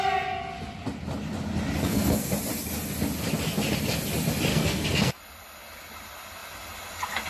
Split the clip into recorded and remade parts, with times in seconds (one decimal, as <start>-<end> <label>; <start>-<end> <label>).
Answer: 0.0-1.8 recorded; 1.8-2.3 remade; 2.3-4.5 recorded; 4.5-5.2 remade; 5.2-7.3 recorded